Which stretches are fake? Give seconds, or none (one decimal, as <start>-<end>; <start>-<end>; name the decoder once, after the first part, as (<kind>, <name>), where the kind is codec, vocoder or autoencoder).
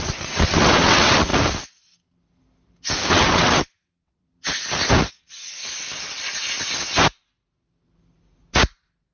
0.0-1.3 (vocoder, WaveNeXt); 3.1-4.3; 5.1-5.6